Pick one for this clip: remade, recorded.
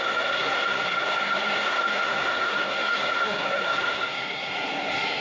remade